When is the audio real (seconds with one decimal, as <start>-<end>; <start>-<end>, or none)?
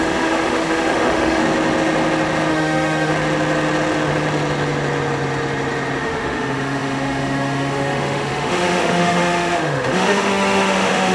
1.4-2.5; 3.1-6.0